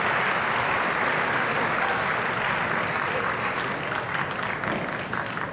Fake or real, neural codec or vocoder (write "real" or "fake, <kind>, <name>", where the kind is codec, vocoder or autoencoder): real